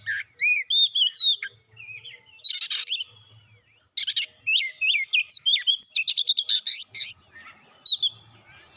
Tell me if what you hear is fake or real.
real